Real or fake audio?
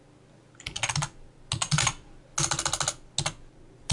real